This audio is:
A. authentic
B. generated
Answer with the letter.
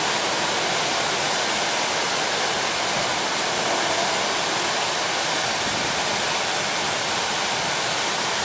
A